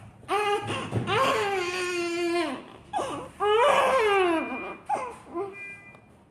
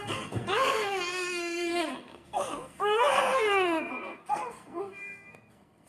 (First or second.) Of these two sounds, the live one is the first